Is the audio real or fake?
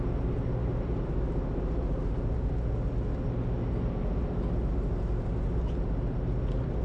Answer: real